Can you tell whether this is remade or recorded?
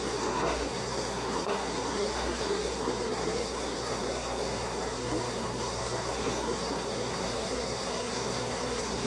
remade